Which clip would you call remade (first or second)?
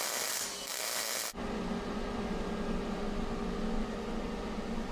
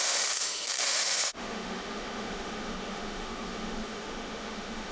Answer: second